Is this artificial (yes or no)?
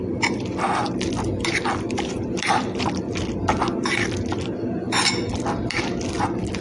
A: no